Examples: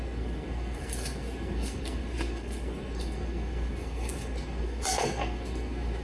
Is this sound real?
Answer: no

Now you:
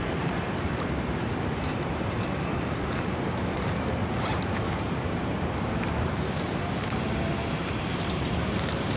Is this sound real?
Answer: no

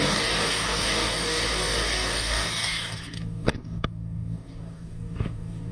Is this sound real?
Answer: no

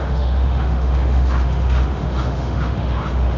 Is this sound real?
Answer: no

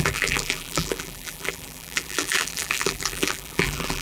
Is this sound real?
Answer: no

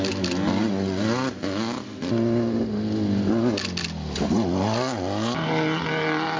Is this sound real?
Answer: yes